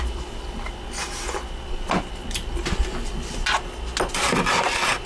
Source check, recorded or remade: recorded